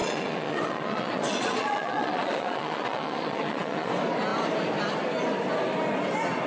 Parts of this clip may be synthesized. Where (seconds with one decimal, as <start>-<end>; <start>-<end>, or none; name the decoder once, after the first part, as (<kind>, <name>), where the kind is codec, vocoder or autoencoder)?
0.0-3.9 (vocoder, Vocos)